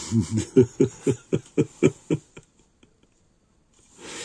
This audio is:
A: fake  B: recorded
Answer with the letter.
B